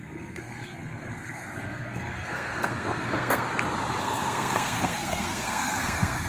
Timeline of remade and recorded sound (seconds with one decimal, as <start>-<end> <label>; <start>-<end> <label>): 0.0-3.5 remade; 3.5-4.0 recorded; 4.0-6.3 remade